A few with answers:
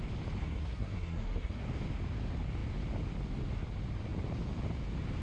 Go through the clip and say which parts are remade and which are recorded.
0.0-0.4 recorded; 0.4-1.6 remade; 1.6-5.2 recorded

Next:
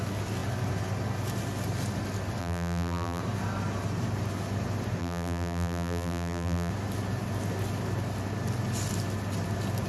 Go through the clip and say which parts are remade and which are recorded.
0.0-2.4 recorded; 2.4-3.2 remade; 3.2-5.0 recorded; 5.0-6.7 remade; 6.7-9.9 recorded